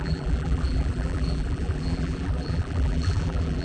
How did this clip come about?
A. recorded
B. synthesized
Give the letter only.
B